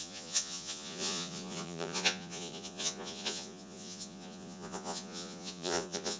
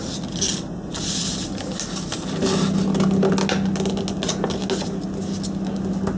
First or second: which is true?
second